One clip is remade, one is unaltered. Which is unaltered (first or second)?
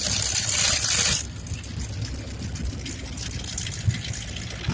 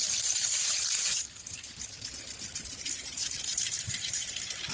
first